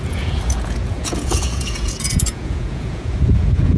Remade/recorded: remade